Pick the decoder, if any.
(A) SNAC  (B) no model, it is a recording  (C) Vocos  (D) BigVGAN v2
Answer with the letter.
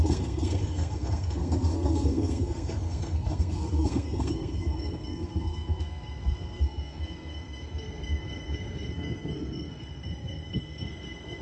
A